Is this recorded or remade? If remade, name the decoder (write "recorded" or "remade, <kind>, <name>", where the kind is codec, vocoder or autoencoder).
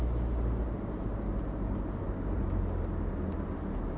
recorded